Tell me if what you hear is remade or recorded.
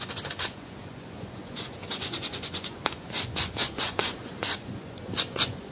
remade